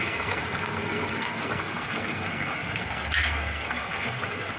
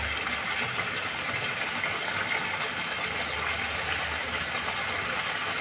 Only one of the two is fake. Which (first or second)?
first